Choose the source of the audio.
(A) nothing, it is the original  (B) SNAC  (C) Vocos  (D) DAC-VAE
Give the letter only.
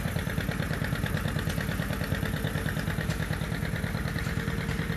A